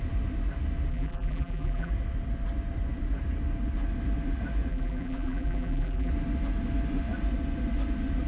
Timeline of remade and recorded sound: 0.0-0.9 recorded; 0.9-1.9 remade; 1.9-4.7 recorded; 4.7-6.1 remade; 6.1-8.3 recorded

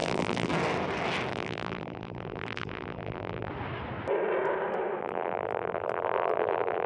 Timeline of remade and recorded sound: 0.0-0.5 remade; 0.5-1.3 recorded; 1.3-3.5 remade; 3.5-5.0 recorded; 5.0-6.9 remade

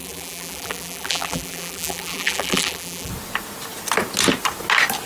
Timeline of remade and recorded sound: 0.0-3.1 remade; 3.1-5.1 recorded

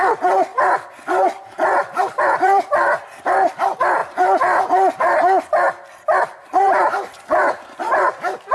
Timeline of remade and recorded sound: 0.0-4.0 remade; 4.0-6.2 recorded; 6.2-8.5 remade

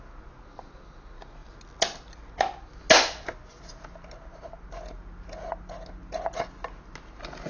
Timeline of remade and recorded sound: 0.0-7.5 recorded